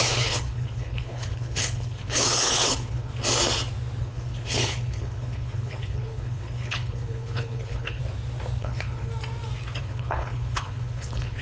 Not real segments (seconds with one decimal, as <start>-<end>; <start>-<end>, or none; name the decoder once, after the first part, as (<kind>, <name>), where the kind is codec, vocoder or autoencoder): 0.0-3.1 (codec, HILCodec); 4.0-8.0; 8.6-9.1; 9.8-11.4